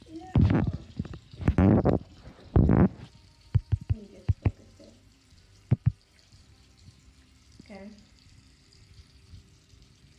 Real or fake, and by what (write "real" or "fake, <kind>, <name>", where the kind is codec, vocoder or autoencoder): fake, vocoder, BigVGAN v2